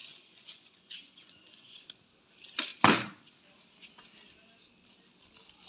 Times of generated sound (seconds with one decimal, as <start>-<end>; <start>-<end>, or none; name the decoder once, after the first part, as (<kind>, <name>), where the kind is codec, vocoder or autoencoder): 0.0-1.8 (vocoder, Vocos)